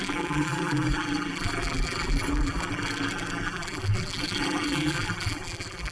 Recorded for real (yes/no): no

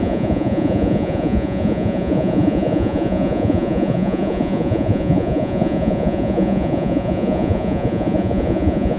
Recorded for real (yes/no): no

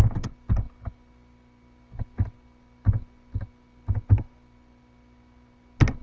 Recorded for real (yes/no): yes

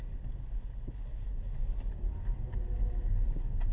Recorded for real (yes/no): yes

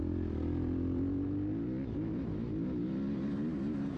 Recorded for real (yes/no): yes